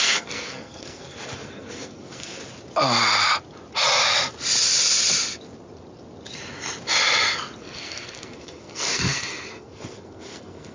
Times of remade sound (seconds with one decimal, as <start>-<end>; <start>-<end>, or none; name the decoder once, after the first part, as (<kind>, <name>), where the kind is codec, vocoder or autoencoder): 0.0-2.4 (codec, SNAC); 7.6-10.7